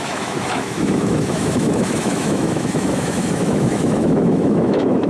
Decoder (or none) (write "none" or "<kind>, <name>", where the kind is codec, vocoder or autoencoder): autoencoder, DAC-VAE